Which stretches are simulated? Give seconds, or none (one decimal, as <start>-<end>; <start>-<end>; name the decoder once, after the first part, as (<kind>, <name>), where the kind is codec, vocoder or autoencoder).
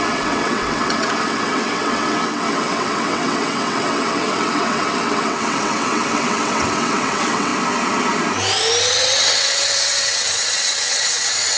0.0-7.5 (vocoder, WaveNeXt); 8.8-11.6